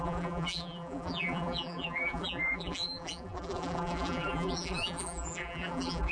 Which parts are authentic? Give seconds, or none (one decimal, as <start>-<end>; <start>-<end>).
none